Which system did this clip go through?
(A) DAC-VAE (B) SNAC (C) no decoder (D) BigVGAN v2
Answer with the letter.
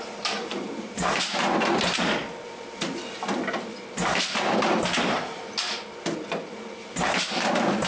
C